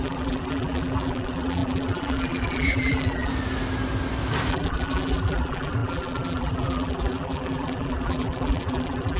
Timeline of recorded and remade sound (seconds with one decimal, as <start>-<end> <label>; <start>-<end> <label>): 0.0-3.3 remade; 3.3-4.5 recorded; 4.5-9.2 remade